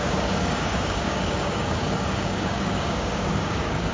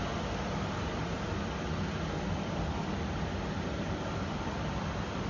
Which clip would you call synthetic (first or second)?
first